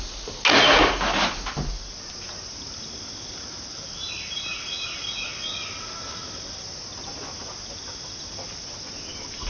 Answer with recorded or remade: recorded